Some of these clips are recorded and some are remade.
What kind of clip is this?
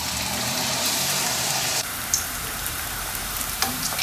remade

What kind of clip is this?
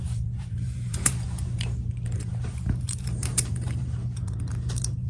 remade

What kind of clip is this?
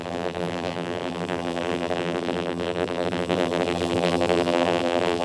remade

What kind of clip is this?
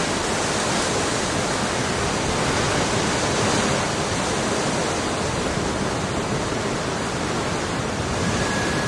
recorded